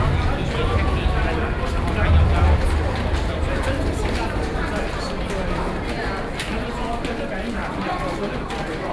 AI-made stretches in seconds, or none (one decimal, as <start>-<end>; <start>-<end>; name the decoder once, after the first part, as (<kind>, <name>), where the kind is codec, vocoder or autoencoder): none